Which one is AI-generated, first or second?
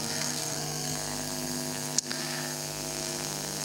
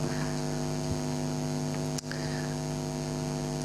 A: first